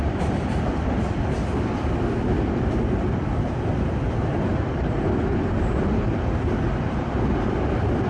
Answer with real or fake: fake